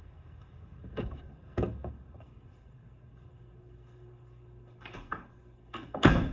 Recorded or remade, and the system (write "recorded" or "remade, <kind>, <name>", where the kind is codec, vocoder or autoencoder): remade, codec, SNAC